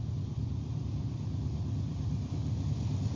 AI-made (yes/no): no